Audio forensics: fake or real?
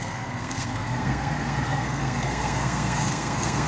fake